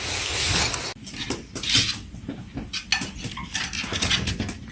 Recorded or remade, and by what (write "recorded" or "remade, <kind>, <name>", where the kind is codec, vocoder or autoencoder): recorded